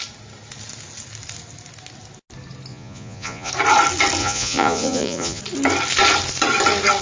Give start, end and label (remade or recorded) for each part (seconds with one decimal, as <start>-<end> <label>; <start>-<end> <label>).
0.0-2.7 recorded; 2.7-3.5 remade; 3.5-4.2 recorded; 4.2-5.4 remade; 5.4-7.0 recorded